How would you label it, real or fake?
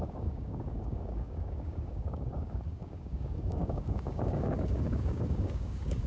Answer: fake